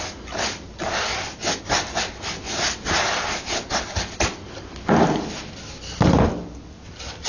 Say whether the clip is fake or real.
real